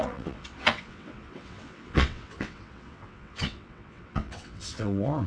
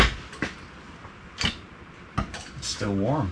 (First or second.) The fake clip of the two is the first